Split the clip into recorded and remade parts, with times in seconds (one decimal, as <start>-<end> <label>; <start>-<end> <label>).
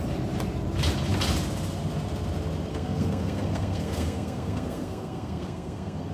0.0-2.7 recorded; 2.7-6.1 remade